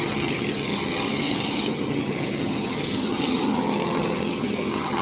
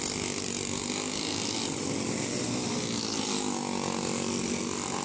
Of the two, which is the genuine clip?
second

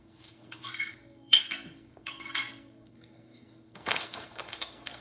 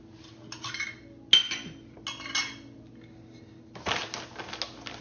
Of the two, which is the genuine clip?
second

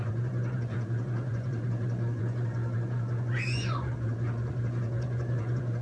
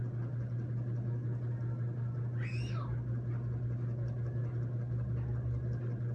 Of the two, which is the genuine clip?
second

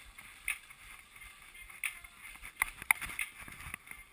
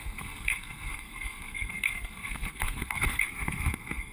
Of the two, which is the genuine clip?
first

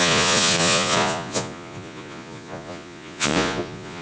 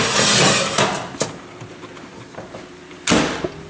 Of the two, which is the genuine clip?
second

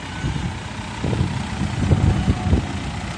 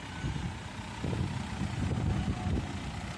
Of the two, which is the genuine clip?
first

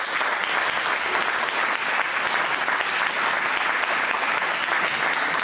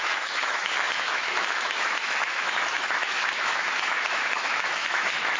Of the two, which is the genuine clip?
first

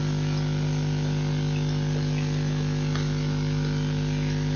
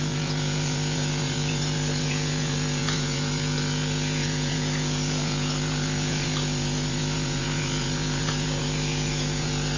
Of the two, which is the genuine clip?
first